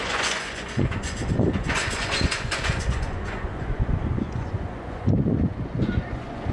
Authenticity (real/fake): fake